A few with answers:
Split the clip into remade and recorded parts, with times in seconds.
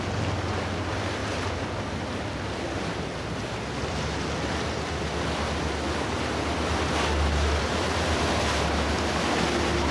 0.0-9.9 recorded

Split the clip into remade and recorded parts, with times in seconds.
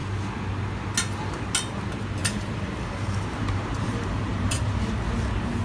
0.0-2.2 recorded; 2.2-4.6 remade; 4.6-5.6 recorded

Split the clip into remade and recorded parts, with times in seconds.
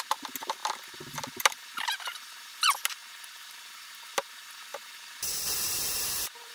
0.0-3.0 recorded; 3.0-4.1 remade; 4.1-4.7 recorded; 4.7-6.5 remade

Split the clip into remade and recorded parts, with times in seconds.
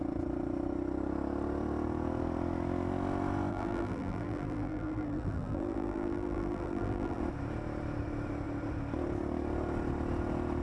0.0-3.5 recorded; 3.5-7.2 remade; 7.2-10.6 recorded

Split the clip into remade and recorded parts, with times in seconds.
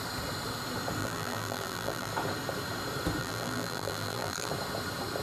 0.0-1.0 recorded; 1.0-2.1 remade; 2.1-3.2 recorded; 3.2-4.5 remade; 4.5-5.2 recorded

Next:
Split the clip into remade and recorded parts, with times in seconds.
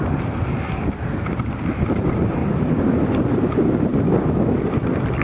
0.0-2.4 remade; 2.4-3.3 recorded; 3.3-3.9 remade; 3.9-5.2 recorded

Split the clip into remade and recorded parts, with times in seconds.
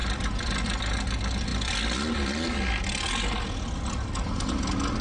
0.0-0.8 remade; 0.8-5.0 recorded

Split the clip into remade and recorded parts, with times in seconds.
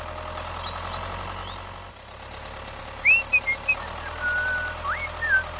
0.0-5.6 recorded